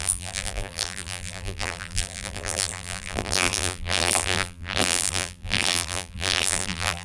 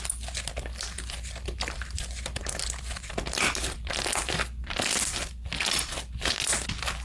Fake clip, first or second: first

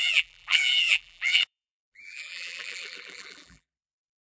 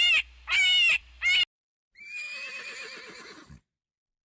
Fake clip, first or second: first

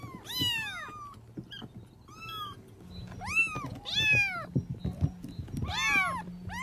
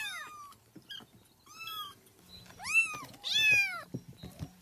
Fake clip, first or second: second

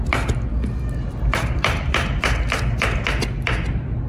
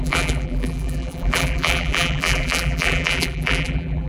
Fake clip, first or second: second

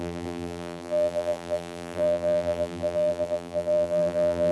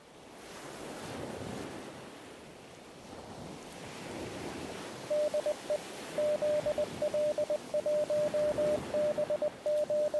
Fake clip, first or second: first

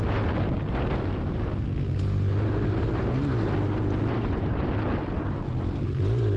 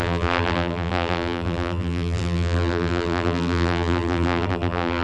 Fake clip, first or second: second